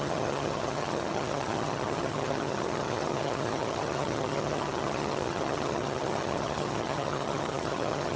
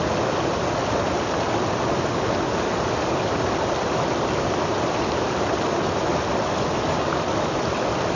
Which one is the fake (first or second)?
first